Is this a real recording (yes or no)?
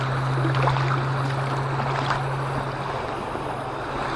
yes